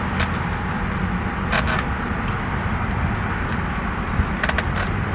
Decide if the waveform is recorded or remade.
recorded